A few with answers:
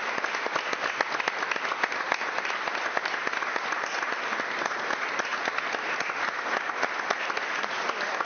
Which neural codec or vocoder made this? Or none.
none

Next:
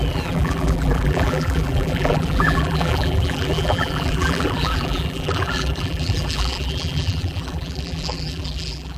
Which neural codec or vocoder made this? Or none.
vocoder, BigVGAN v2